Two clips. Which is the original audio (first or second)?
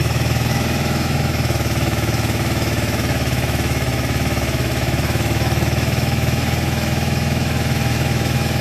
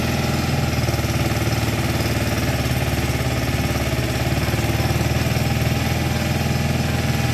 second